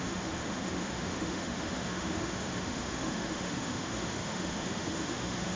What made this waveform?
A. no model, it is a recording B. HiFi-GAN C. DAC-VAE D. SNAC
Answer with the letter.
C